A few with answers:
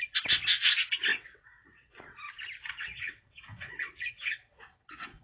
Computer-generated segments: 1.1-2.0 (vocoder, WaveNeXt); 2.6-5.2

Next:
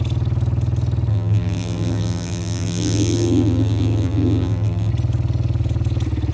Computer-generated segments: 1.1-4.9 (vocoder, BigVGAN v2)

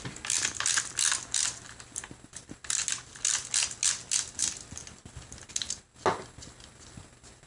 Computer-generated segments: none

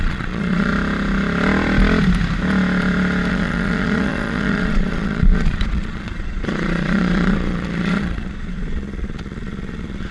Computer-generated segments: 0.0-0.7 (vocoder, Vocos); 3.3-10.1